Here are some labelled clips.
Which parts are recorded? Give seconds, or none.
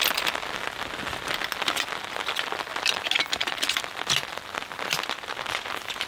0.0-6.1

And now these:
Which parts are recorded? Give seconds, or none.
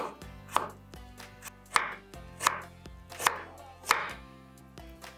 0.0-4.0; 4.6-5.2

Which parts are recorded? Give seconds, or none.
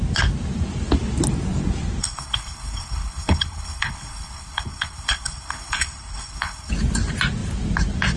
0.0-2.0; 6.7-8.2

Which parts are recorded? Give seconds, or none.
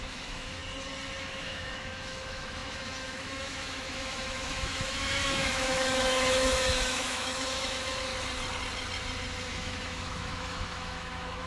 0.6-1.2; 8.1-9.5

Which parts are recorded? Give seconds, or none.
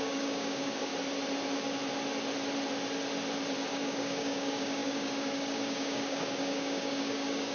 0.9-3.7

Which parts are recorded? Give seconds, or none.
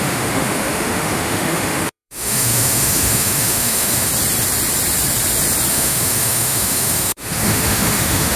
4.1-5.7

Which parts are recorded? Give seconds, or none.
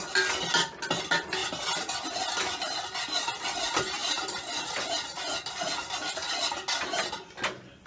0.0-7.9